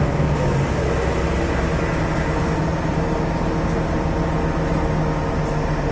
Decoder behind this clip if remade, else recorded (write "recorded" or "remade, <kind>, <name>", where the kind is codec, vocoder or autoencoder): recorded